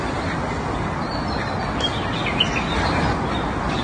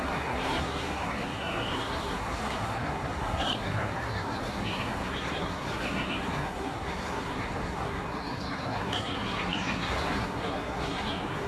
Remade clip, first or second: second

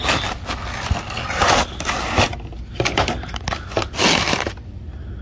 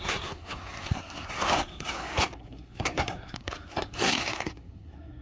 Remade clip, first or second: second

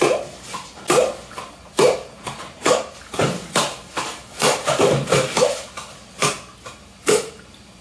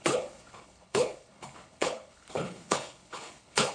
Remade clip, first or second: second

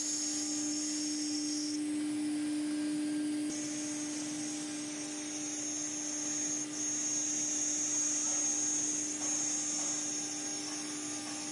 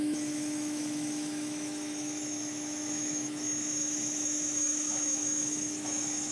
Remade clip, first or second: second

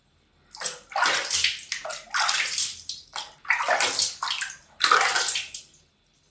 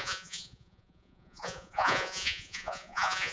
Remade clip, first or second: second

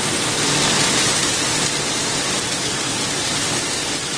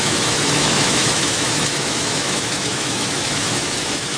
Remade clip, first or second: second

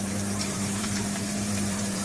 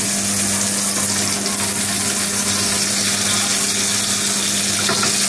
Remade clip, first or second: first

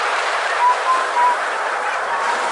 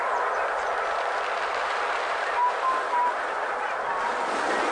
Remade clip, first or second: first